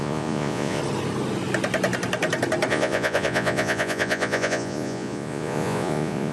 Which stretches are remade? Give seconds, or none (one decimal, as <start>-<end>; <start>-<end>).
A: 0.0-0.8; 2.7-6.3